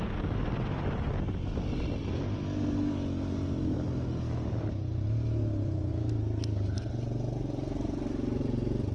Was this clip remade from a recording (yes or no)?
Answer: no